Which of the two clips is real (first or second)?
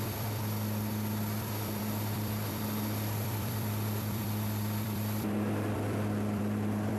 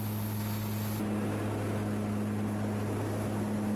second